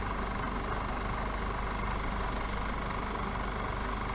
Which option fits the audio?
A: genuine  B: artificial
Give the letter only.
A